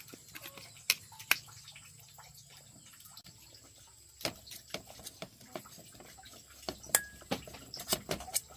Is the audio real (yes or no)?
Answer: yes